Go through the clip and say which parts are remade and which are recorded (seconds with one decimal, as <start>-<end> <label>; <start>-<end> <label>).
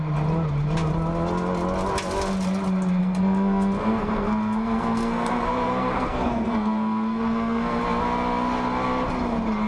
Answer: 0.0-3.0 recorded; 3.0-7.8 remade; 7.8-9.7 recorded